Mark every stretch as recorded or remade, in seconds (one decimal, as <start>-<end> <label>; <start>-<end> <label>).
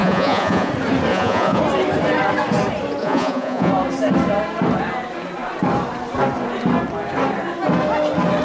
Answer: 0.0-0.7 remade; 0.7-1.1 recorded; 1.1-1.6 remade; 1.6-3.0 recorded; 3.0-3.7 remade; 3.7-8.4 recorded